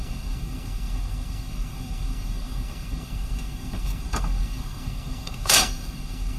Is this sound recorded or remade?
remade